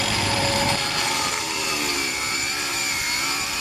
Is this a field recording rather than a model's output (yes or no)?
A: no